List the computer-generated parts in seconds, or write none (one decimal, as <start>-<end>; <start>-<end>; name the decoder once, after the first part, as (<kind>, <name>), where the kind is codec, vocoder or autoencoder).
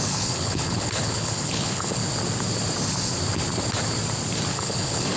0.0-2.0 (codec, HILCodec); 4.5-5.2